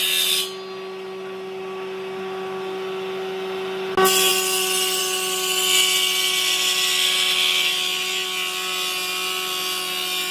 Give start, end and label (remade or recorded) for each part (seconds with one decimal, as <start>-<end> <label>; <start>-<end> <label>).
0.0-10.3 recorded